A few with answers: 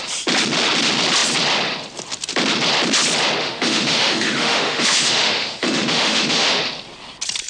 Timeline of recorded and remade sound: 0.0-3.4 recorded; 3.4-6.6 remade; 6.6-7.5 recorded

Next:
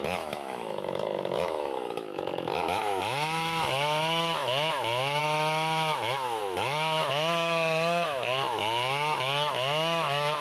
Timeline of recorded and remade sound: 0.0-10.4 remade

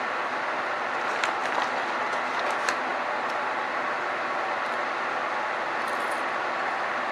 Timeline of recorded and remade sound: 0.0-7.1 recorded